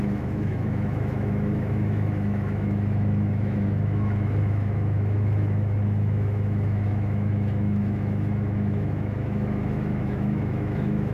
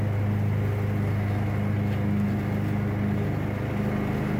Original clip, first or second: second